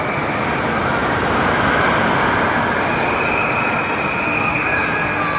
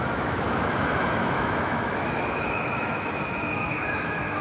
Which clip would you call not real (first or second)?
second